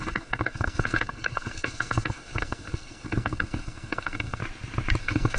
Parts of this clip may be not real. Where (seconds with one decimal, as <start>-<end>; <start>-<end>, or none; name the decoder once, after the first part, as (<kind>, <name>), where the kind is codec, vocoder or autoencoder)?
0.0-4.4 (codec, SNAC); 5.0-5.4